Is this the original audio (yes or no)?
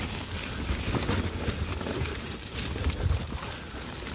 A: yes